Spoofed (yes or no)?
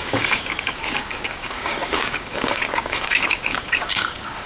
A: yes